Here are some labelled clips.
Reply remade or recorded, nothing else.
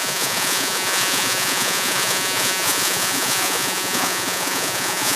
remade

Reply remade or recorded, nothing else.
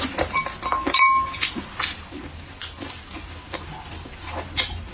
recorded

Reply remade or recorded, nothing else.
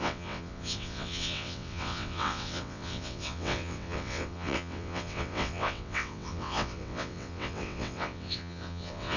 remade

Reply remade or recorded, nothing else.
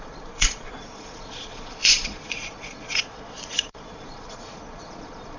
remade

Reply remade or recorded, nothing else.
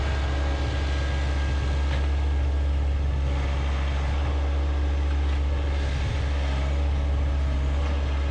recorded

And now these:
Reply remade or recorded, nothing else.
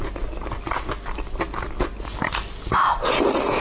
recorded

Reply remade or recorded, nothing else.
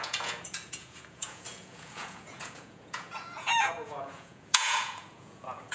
remade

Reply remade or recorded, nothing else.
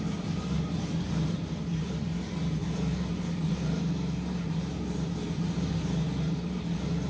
remade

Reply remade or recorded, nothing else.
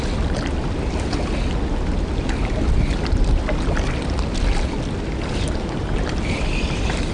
recorded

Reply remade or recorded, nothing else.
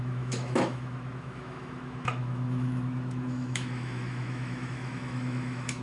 remade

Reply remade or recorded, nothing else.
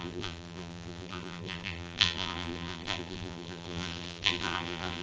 remade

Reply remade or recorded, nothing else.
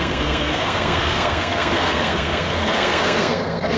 remade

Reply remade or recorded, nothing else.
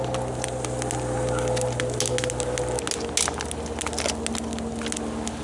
recorded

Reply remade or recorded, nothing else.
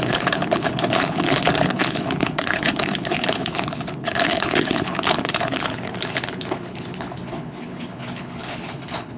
remade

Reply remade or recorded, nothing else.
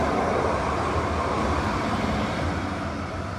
recorded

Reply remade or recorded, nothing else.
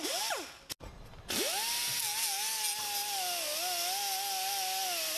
recorded